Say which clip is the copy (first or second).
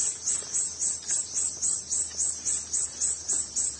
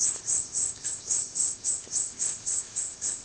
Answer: second